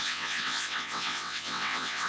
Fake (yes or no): yes